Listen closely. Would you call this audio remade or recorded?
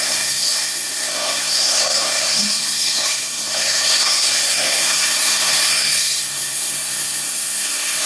remade